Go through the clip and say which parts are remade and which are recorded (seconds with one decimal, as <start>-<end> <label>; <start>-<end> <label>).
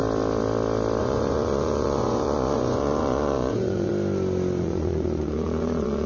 0.0-1.0 recorded; 1.0-3.9 remade; 3.9-4.6 recorded; 4.6-6.1 remade